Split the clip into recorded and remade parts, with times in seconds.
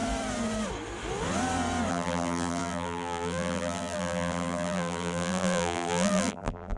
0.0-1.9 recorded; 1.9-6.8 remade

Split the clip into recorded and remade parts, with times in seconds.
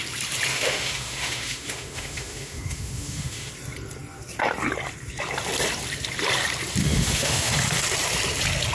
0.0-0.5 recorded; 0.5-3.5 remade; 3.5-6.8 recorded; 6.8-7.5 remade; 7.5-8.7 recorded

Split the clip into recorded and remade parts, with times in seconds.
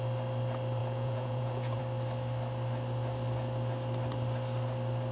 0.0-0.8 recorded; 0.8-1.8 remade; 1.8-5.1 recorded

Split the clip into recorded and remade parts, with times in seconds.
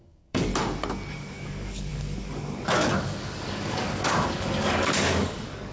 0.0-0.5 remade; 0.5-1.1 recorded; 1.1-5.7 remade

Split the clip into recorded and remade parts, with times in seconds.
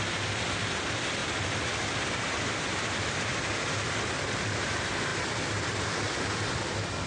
0.0-1.2 recorded; 1.2-3.9 remade; 3.9-5.1 recorded; 5.1-5.8 remade; 5.8-7.1 recorded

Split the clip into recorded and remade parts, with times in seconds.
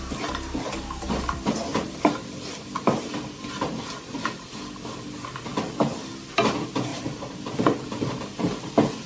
0.0-6.9 recorded; 6.9-7.4 remade; 7.4-9.1 recorded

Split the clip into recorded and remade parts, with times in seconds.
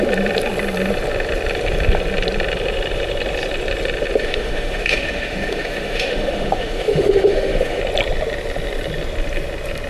0.0-4.2 recorded; 4.2-7.8 remade; 7.8-9.9 recorded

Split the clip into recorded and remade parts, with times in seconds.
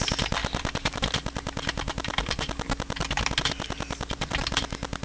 0.0-5.0 recorded